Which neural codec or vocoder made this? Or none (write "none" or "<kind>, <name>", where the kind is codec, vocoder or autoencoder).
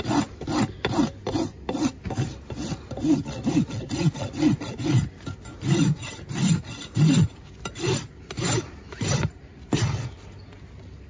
none